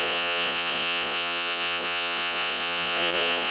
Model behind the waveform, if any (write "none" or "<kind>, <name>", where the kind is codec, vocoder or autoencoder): vocoder, Vocos